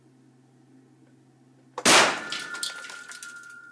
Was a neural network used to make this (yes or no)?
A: no